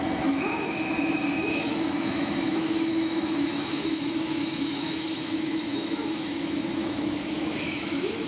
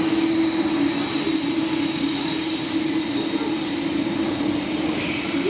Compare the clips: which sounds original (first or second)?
second